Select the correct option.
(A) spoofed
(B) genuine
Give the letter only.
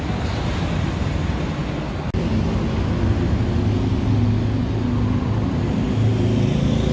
B